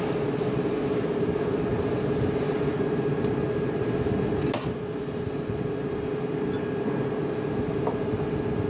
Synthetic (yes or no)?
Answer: no